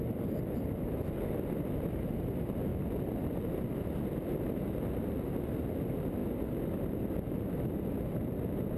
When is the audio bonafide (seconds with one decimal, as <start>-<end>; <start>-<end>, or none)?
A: 0.0-8.8